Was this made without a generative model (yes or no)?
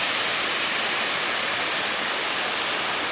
yes